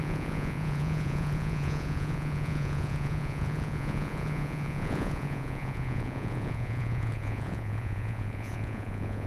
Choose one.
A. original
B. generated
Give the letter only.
B